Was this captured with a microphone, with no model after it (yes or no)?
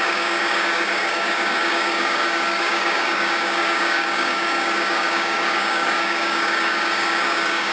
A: no